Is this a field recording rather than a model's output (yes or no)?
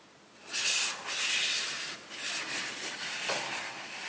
yes